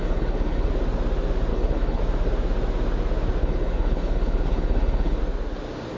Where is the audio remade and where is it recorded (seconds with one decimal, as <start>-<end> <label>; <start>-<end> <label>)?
0.0-0.7 remade; 0.7-1.5 recorded; 1.5-2.0 remade; 2.0-3.4 recorded; 3.4-5.2 remade; 5.2-6.0 recorded